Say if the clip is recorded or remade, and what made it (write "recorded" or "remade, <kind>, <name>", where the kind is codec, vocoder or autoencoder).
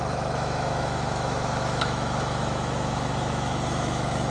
remade, autoencoder, DAC-VAE